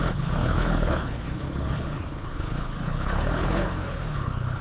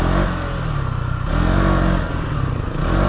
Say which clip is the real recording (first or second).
second